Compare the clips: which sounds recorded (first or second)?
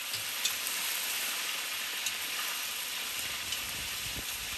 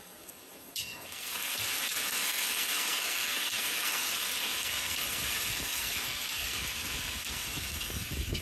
first